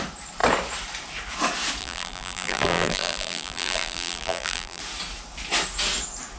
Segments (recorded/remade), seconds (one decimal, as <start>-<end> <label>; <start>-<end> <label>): 0.0-1.8 recorded; 1.8-4.8 remade; 4.8-6.4 recorded